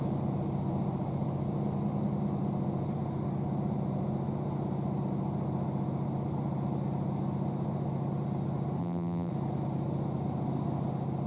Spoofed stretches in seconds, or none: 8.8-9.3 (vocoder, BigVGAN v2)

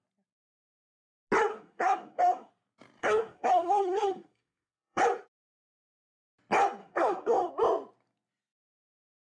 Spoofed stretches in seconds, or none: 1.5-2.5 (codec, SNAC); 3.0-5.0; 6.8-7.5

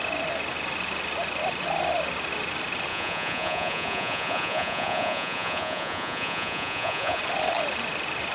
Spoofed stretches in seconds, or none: 2.9-7.2 (vocoder, Vocos)

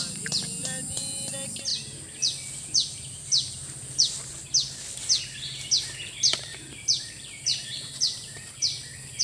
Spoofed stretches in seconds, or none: 6.5-9.2 (vocoder, BigVGAN v2)

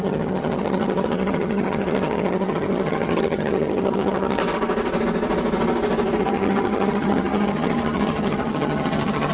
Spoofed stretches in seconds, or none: 0.0-4.4 (vocoder, HiFi-GAN); 6.2-9.3

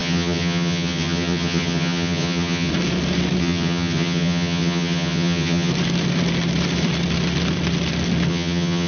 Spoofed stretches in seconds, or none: 0.0-2.7 (vocoder, HiFi-GAN); 3.4-5.7; 8.3-8.9

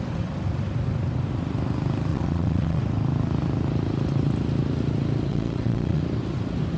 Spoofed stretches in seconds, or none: 2.1-2.8 (vocoder, Vocos); 5.3-6.0